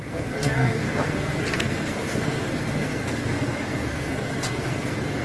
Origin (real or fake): fake